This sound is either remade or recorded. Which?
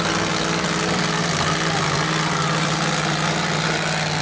recorded